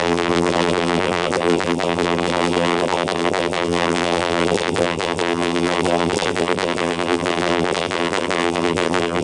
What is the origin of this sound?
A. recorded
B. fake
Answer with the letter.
B